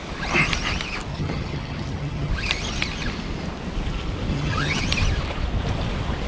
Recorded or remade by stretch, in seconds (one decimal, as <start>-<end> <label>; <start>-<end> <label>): 0.0-1.1 recorded; 1.1-2.3 remade; 2.3-4.3 recorded; 4.3-4.8 remade; 4.8-6.3 recorded